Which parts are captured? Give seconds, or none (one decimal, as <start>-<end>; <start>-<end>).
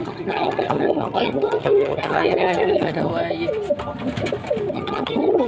3.1-4.7